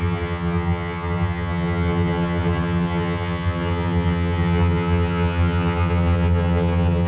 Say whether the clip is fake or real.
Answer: fake